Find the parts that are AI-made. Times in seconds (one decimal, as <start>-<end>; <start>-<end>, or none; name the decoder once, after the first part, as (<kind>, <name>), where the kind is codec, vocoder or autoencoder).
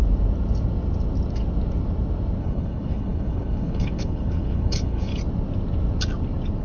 2.4-5.1 (codec, HILCodec)